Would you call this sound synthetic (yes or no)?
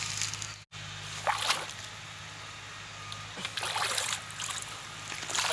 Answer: no